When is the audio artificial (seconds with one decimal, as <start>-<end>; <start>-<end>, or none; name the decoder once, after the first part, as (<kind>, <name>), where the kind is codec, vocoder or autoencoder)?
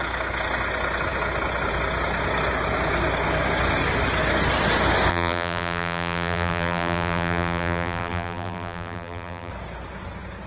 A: 5.1-9.5 (vocoder, BigVGAN v2)